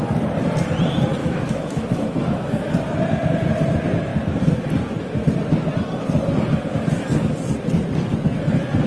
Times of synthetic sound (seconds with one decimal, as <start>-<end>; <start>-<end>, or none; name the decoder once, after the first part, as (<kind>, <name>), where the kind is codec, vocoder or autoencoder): 1.2-2.7 (autoencoder, DAC-VAE)